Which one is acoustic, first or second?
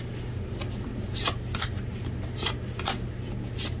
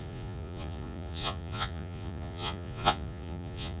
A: first